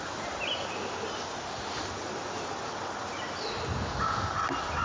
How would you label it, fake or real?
real